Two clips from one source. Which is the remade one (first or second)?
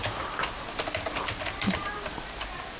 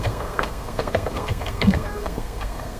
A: second